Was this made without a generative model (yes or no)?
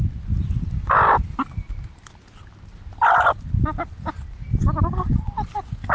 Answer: yes